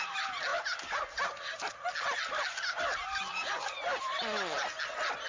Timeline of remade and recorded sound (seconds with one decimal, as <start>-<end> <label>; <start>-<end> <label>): 0.0-5.3 recorded